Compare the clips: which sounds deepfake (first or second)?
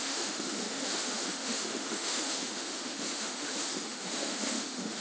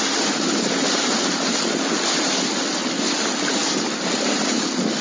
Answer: first